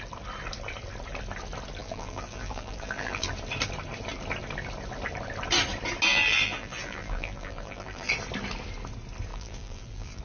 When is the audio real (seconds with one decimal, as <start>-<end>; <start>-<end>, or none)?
0.0-1.8; 3.3-6.1; 8.1-9.3